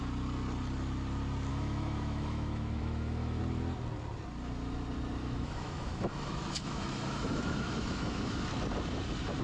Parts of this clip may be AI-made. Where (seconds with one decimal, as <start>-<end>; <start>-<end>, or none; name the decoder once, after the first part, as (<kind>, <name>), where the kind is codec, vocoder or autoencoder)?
1.5-3.4 (autoencoder, DAC-VAE); 5.2-8.5